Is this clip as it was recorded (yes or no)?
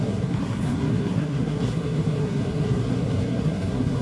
no